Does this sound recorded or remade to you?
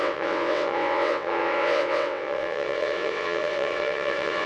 remade